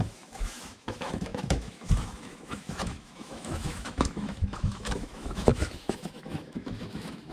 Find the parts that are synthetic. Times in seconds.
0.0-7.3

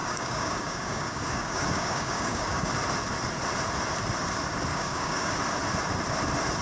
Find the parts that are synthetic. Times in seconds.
0.0-2.7; 4.7-5.3

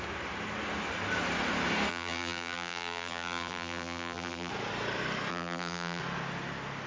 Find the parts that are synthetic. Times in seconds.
1.9-4.5; 5.3-6.0

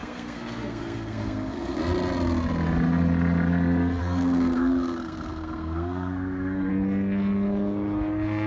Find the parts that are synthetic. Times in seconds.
0.0-1.8; 4.0-6.7

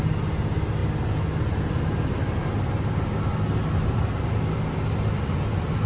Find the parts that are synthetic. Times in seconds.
none

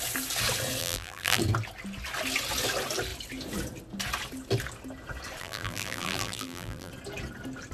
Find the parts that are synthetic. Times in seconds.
0.8-1.4; 5.4-6.9

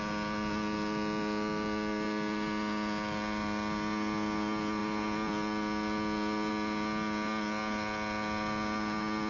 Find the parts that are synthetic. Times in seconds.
none